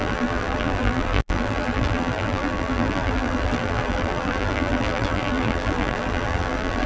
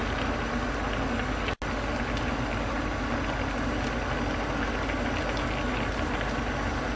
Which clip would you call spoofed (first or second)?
first